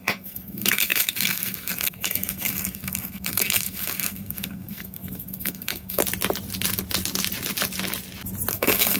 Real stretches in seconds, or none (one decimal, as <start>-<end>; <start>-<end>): 6.0-8.5